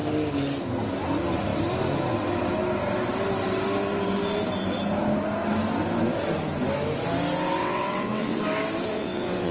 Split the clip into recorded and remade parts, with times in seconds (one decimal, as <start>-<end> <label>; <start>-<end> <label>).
0.0-7.6 recorded; 7.6-8.4 remade; 8.4-8.9 recorded; 8.9-9.5 remade